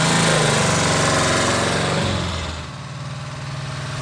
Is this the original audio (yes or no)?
yes